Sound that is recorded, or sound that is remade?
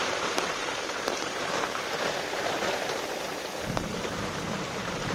remade